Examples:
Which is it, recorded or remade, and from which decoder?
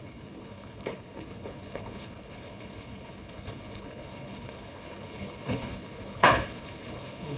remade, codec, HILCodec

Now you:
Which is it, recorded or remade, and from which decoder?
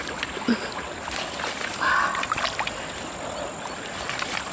recorded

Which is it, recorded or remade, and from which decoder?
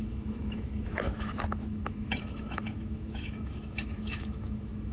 remade, autoencoder, DAC-VAE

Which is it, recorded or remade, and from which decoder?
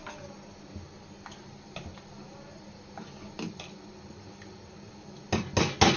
recorded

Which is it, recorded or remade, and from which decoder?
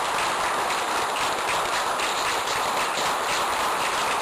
recorded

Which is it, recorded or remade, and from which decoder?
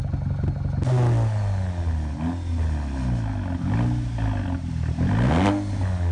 recorded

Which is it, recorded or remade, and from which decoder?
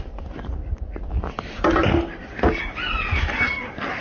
recorded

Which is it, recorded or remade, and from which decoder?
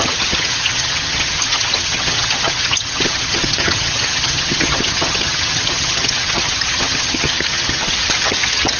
remade, vocoder, HiFi-GAN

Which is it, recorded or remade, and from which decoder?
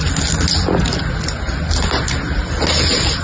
recorded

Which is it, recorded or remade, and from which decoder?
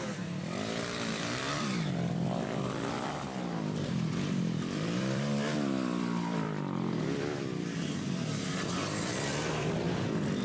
remade, vocoder, BigVGAN v2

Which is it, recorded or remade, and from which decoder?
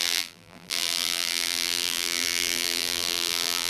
remade, vocoder, BigVGAN v2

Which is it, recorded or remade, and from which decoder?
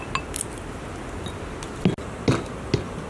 recorded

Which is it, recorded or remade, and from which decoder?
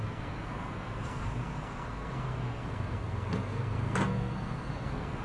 remade, codec, SNAC